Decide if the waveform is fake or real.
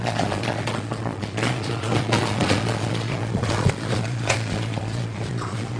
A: fake